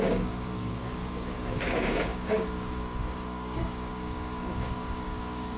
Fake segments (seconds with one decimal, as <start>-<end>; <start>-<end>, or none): 0.0-5.6